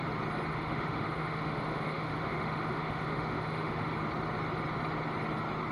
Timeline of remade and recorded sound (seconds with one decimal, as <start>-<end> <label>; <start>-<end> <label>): 0.0-0.5 recorded; 0.5-3.9 remade; 3.9-5.7 recorded